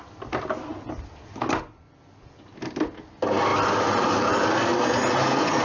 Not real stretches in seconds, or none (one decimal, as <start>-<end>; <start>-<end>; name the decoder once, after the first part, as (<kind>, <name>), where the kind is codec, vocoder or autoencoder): none